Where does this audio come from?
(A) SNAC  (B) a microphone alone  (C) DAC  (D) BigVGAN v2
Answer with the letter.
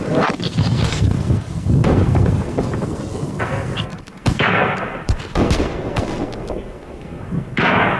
A